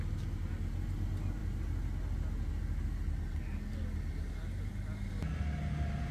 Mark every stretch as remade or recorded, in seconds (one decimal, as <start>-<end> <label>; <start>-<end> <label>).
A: 0.0-6.1 recorded